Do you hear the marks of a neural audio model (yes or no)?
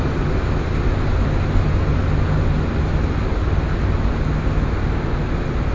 no